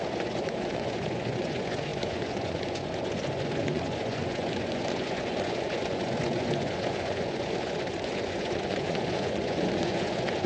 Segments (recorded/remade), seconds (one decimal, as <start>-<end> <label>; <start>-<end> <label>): 0.0-10.5 remade